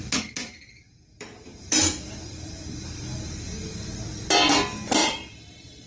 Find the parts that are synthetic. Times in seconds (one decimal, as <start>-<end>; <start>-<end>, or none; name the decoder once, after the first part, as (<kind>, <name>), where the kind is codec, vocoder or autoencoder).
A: 0.4-2.6 (vocoder, BigVGAN v2); 5.0-5.9